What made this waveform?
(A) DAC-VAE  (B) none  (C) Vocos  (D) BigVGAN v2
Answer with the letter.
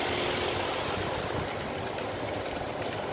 B